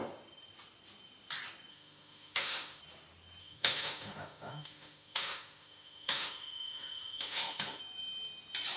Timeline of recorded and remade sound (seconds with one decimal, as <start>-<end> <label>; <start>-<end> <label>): 0.0-1.7 recorded; 1.7-2.8 remade; 2.8-3.4 recorded; 3.4-7.8 remade; 7.8-8.8 recorded